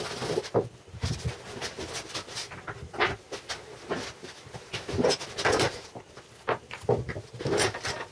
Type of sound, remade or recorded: recorded